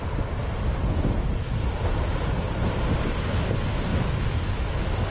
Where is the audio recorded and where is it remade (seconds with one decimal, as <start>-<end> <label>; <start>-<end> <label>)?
0.0-3.9 recorded; 3.9-5.1 remade